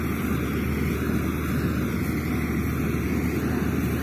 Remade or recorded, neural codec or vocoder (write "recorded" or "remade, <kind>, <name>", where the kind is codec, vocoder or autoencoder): recorded